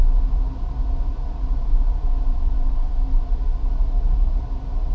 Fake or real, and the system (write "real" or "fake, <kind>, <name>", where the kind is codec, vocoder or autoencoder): real